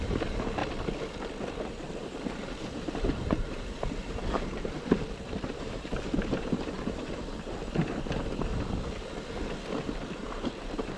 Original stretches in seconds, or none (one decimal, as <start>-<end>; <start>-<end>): 0.6-1.7; 8.5-9.8